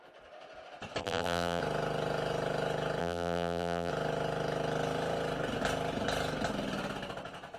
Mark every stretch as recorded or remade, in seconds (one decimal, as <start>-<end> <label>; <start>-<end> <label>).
0.0-1.0 recorded; 1.0-1.6 remade; 1.6-3.0 recorded; 3.0-3.9 remade; 3.9-7.6 recorded